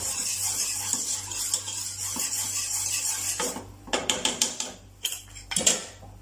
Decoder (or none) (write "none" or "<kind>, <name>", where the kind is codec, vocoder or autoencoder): none